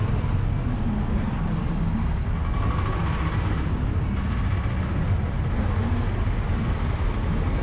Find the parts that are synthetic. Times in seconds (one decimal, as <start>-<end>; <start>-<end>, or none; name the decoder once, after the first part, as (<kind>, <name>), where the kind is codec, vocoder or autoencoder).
1.7-2.2 (codec, DAC)